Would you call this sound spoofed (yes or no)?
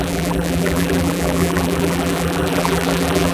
yes